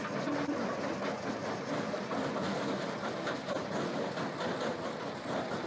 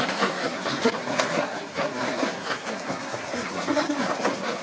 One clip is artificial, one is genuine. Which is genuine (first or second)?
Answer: first